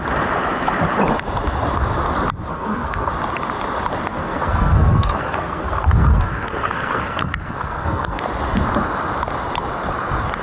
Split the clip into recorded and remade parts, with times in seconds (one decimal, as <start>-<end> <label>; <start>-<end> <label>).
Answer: 0.0-2.5 recorded; 2.5-3.1 remade; 3.1-4.1 recorded; 4.1-8.2 remade; 8.2-10.4 recorded